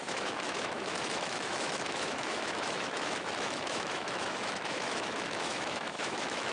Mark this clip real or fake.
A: fake